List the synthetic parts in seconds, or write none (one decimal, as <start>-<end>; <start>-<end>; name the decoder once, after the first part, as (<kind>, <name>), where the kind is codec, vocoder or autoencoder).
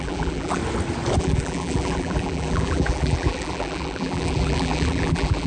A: 0.0-0.6 (vocoder, BigVGAN v2); 1.2-5.5